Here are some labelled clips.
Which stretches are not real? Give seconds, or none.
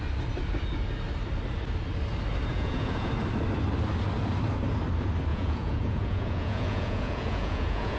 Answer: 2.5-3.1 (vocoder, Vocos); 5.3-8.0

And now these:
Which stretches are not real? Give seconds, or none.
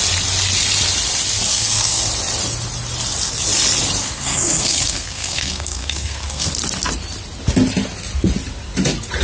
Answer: 1.5-2.0 (codec, SNAC); 4.0-6.5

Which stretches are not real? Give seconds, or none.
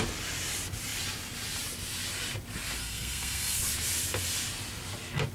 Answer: 2.8-3.6 (codec, SNAC)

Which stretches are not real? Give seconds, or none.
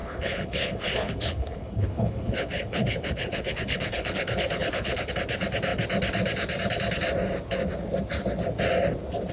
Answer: 0.0-5.1 (codec, HILCodec)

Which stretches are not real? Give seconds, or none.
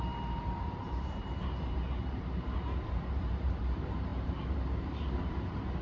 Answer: 0.0-5.8 (vocoder, BigVGAN v2)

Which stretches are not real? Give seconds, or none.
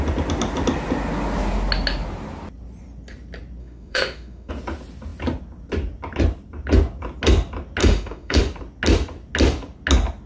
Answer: 3.6-4.5 (autoencoder, DAC-VAE); 7.8-8.4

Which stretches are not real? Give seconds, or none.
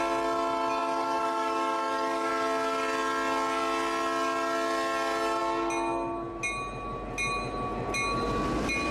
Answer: 0.8-2.3 (codec, DAC)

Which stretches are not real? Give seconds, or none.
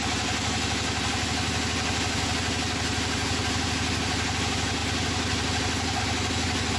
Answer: none